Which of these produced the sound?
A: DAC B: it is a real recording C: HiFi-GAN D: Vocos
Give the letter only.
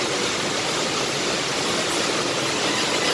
B